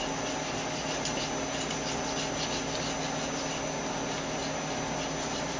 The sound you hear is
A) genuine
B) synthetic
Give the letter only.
A